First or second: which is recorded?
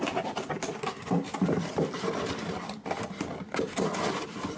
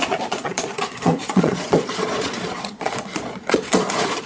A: first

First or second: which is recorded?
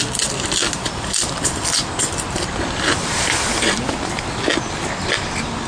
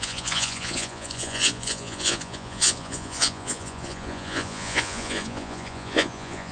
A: first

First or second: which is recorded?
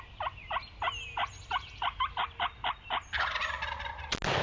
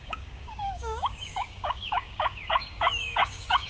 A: first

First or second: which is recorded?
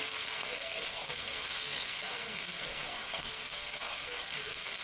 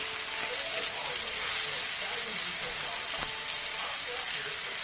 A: second